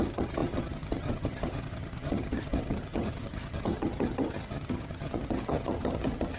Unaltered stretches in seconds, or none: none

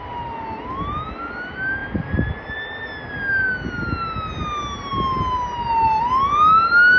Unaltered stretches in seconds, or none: 0.0-7.0

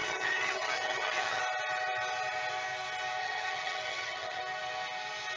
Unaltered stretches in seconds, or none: 1.4-3.2; 4.4-5.4

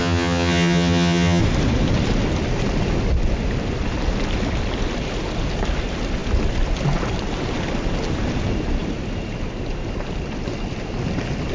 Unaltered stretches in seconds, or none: 1.4-11.5

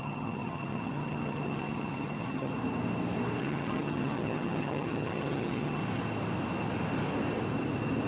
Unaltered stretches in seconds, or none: 2.5-3.4; 5.8-8.1

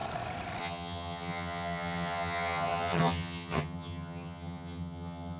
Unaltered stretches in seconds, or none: 0.0-0.6